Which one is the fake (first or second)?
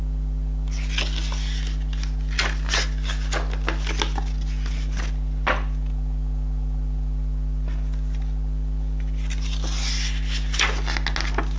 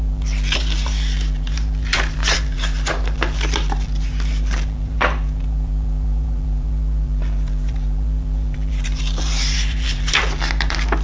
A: second